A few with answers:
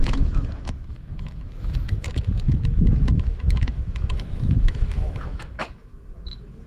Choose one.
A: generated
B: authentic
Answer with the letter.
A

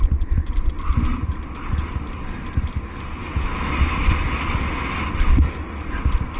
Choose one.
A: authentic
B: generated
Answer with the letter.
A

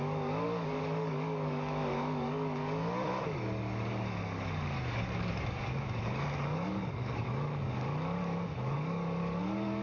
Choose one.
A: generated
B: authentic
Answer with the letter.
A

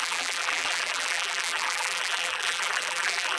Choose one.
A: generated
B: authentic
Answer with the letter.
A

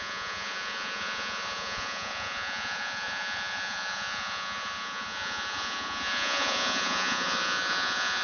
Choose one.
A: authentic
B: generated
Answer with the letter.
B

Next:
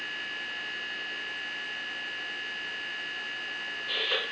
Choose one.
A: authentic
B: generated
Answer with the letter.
A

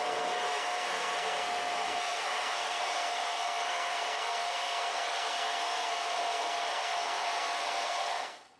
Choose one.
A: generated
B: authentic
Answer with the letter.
A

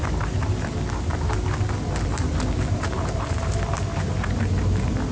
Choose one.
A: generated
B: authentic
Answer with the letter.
B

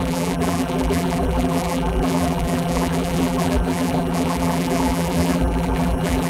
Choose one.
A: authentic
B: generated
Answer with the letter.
B